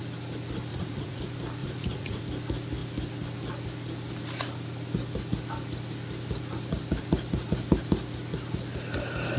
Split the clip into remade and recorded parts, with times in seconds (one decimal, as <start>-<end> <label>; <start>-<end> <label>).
0.0-0.7 recorded; 0.7-1.2 remade; 1.2-1.6 recorded; 1.6-2.2 remade; 2.2-9.4 recorded